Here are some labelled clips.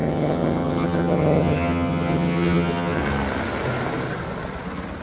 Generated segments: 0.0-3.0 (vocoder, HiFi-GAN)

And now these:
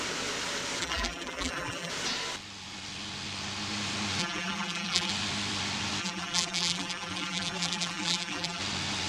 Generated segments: 0.8-1.9 (vocoder, BigVGAN v2); 4.2-5.1; 6.0-8.6